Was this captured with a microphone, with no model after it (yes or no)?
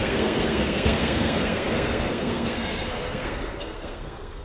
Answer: no